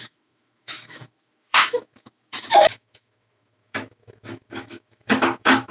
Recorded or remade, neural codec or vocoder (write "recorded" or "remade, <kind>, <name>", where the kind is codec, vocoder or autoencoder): remade, autoencoder, DAC-VAE